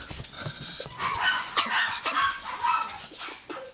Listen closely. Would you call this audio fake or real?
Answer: fake